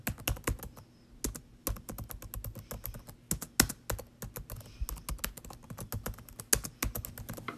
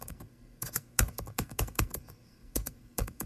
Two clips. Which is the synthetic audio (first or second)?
second